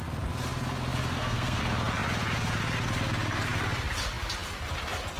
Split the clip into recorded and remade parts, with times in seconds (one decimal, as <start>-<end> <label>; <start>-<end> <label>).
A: 0.0-1.1 recorded; 1.1-1.6 remade; 1.6-5.2 recorded